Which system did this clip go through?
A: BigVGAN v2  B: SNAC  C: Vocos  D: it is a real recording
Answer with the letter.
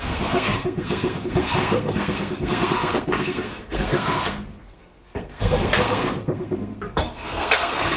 B